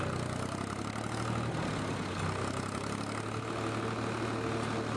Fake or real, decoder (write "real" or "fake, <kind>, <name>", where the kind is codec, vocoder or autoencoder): real